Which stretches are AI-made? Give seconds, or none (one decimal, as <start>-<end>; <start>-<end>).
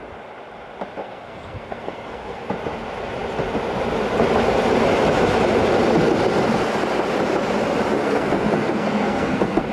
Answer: 1.0-2.5; 8.0-9.7